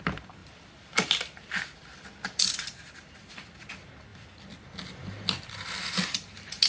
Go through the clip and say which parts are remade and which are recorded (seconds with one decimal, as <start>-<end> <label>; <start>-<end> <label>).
0.0-0.4 recorded; 0.4-3.3 remade; 3.3-4.1 recorded; 4.1-6.7 remade